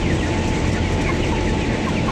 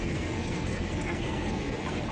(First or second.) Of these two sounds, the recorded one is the first